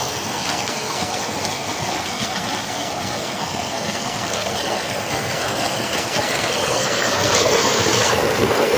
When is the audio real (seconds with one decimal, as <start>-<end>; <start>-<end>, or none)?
none